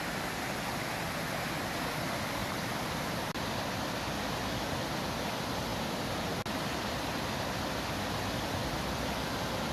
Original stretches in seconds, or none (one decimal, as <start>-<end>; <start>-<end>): 0.0-9.7